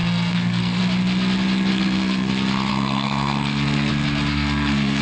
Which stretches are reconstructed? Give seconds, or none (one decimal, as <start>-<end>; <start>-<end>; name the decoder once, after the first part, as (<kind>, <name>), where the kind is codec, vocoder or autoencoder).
0.0-0.8 (codec, SNAC); 1.7-2.3; 2.7-3.9; 4.3-5.0